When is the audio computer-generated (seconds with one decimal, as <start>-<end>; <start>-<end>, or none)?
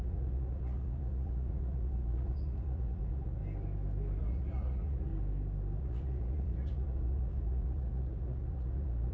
0.0-3.4; 4.2-5.1; 5.8-9.1